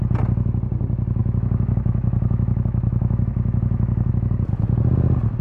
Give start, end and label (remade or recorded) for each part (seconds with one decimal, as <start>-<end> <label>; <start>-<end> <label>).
0.0-1.2 recorded; 1.2-4.1 remade; 4.1-5.4 recorded